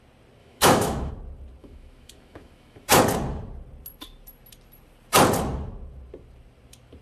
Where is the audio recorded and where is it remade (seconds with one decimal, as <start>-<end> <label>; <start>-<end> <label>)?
0.0-0.4 recorded; 0.4-1.1 remade; 1.1-1.6 recorded; 1.6-3.0 remade; 3.0-7.0 recorded